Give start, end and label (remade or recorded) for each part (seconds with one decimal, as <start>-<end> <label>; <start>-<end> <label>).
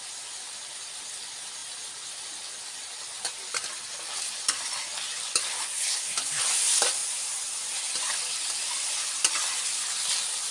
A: 0.0-5.8 recorded; 5.8-6.4 remade; 6.4-10.5 recorded